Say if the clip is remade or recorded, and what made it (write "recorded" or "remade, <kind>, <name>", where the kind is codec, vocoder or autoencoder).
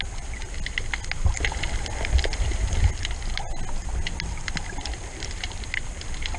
recorded